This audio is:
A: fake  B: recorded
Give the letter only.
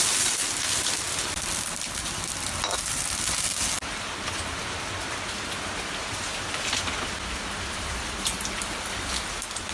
B